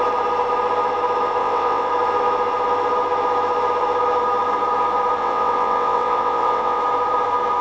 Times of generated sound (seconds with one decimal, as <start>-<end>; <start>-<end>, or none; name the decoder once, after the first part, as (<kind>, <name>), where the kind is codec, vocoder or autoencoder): 1.4-1.9 (vocoder, WaveNeXt); 5.2-6.8